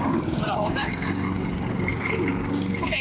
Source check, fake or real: fake